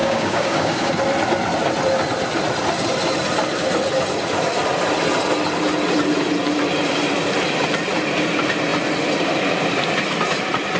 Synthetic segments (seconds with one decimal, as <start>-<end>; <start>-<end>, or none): 0.0-0.9